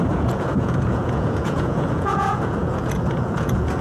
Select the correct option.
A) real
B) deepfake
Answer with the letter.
B